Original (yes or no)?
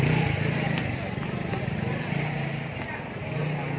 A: yes